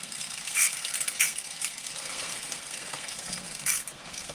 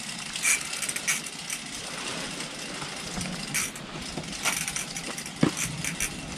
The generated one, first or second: first